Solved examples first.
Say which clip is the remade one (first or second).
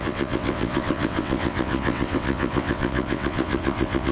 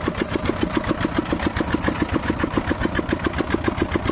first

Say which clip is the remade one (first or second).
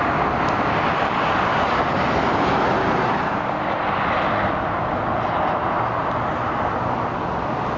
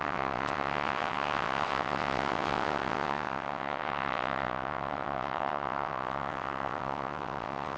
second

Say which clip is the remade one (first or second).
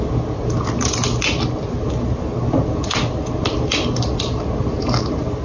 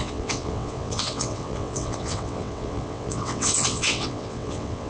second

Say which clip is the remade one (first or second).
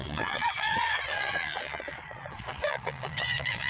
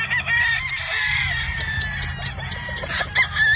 first